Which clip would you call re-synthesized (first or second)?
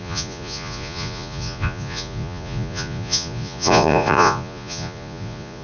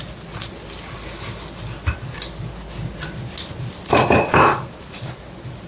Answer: first